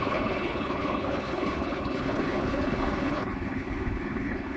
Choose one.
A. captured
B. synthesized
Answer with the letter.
B